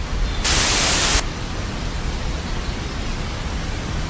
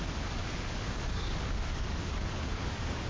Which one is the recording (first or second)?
first